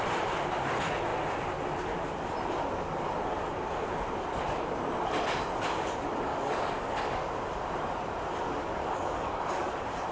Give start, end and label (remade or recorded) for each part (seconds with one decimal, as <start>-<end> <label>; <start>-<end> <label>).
0.0-6.3 recorded; 6.3-7.3 remade; 7.3-8.6 recorded; 8.6-9.7 remade; 9.7-10.1 recorded